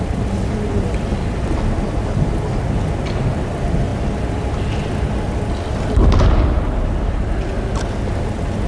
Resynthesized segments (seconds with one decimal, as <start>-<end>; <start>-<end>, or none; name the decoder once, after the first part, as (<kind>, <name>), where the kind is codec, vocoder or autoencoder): none